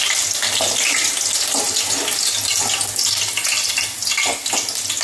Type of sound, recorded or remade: recorded